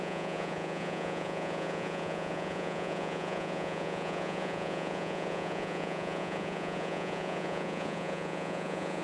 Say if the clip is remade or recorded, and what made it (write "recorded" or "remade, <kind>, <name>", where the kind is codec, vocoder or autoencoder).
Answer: remade, vocoder, Vocos